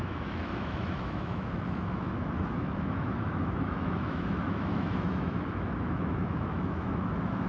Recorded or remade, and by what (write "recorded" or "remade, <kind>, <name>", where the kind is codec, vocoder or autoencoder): remade, autoencoder, DAC-VAE